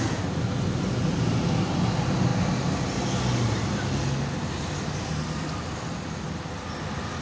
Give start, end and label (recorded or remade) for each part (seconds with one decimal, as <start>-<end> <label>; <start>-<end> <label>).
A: 0.0-7.2 recorded